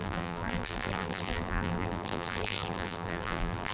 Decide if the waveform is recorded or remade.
remade